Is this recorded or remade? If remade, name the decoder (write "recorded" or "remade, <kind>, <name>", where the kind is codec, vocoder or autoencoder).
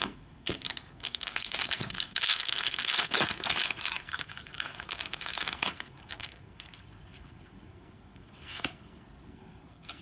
remade, codec, SNAC